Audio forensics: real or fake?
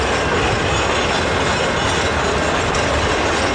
real